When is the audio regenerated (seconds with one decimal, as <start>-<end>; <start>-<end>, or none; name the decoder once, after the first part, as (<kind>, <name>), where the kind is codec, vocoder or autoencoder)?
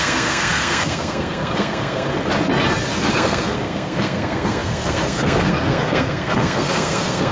0.0-2.1 (codec, SNAC); 3.1-7.3